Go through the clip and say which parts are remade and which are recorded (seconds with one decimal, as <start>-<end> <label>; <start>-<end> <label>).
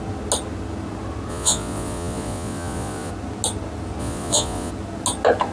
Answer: 0.0-1.3 recorded; 1.3-3.1 remade; 3.1-4.0 recorded; 4.0-4.7 remade; 4.7-5.5 recorded